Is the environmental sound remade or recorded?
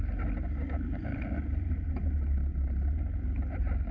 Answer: recorded